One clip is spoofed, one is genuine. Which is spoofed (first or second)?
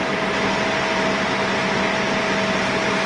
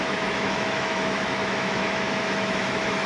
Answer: second